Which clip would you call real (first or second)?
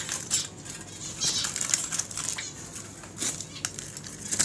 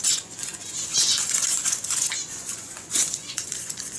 first